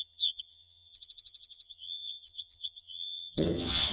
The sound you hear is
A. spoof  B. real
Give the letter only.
A